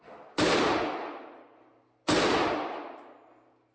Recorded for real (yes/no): yes